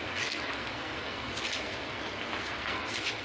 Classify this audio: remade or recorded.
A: remade